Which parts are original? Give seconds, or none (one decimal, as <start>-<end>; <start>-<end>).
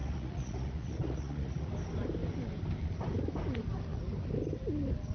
1.7-5.1